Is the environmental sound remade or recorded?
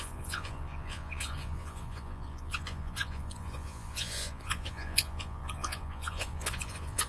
remade